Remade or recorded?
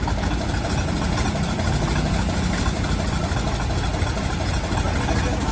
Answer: recorded